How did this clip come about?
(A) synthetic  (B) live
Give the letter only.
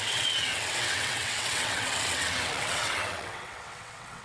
A